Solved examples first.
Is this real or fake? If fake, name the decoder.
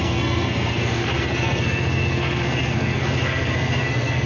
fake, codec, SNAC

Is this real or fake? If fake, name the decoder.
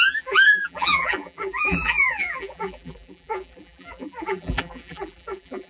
fake, vocoder, BigVGAN v2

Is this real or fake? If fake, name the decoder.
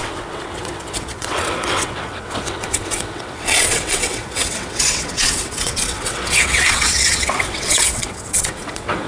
fake, vocoder, WaveNeXt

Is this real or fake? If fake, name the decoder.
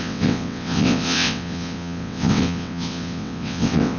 fake, vocoder, WaveNeXt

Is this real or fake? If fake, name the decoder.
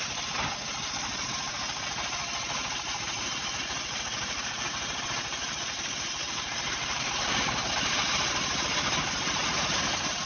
fake, vocoder, BigVGAN v2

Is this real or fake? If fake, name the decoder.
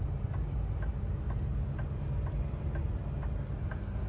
real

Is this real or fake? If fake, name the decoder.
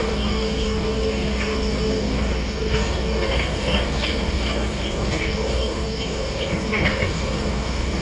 fake, codec, DAC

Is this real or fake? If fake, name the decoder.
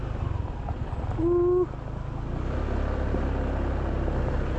real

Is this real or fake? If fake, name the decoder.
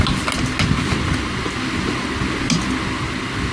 real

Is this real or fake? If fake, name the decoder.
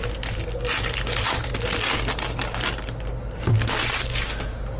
real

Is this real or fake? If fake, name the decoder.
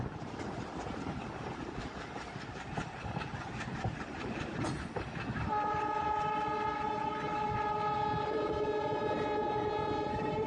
fake, vocoder, BigVGAN v2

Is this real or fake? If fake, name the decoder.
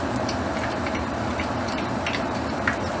fake, vocoder, BigVGAN v2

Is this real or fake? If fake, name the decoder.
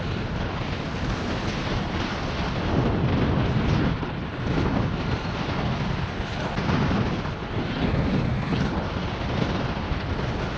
real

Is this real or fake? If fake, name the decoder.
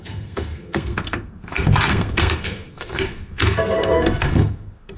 fake, codec, SNAC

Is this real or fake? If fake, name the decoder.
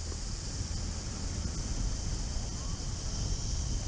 real